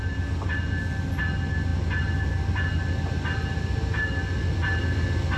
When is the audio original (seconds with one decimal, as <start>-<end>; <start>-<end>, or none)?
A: 0.0-5.4